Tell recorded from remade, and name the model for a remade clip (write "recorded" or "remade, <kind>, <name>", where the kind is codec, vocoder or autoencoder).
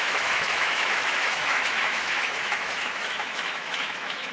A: remade, autoencoder, DAC-VAE